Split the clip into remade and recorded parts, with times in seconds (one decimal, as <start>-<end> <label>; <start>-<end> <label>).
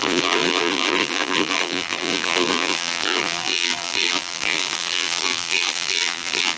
0.0-6.6 remade